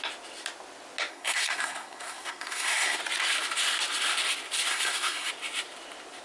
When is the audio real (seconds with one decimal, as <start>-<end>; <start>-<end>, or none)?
0.0-1.1; 3.0-4.7; 5.3-6.2